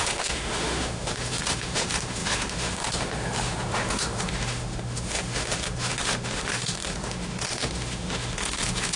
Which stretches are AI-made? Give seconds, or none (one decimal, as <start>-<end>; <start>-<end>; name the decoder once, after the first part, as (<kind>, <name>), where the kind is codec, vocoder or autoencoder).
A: 0.0-9.0 (autoencoder, DAC-VAE)